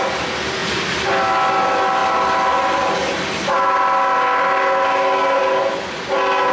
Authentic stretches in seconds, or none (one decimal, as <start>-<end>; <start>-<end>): 0.0-6.5